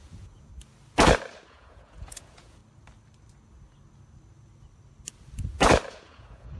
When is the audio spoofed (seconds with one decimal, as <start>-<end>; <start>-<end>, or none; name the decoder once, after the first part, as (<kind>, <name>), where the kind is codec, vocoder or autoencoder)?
0.0-0.5 (vocoder, Vocos); 1.5-2.6; 5.9-6.6